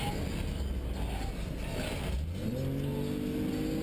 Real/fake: real